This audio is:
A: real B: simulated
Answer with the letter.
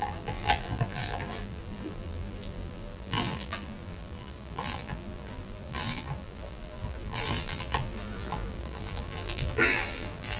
B